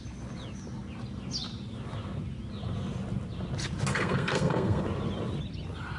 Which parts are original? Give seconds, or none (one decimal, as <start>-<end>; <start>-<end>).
0.0-3.9; 4.8-6.0